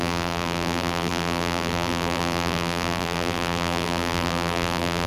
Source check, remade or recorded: remade